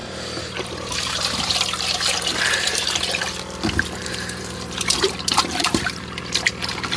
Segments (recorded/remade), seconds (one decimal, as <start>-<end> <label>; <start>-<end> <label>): 0.0-3.2 remade; 3.2-4.0 recorded; 4.0-6.2 remade; 6.2-7.0 recorded